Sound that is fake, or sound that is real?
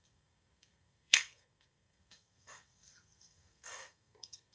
fake